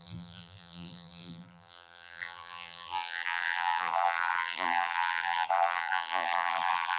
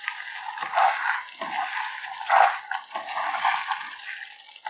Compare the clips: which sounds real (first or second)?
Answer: second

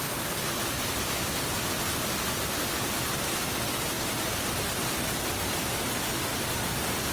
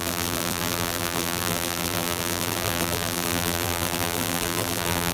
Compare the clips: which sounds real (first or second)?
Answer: first